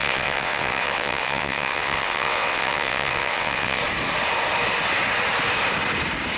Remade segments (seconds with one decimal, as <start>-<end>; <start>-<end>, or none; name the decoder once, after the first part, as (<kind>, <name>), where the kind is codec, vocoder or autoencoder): 0.0-3.8 (vocoder, WaveNeXt)

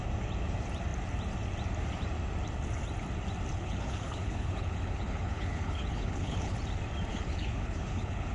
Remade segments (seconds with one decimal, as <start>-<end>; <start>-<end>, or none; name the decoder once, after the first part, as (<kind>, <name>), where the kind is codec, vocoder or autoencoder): 3.5-6.6 (codec, HILCodec); 7.1-8.3